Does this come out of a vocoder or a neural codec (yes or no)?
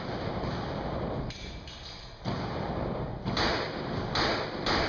no